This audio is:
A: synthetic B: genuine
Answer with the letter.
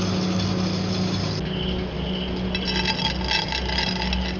B